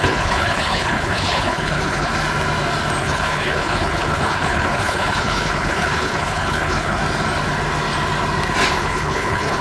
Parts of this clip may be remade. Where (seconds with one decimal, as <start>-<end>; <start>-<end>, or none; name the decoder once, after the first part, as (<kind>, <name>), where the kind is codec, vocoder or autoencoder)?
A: 0.0-2.1 (codec, HILCodec); 3.0-7.0; 8.8-9.6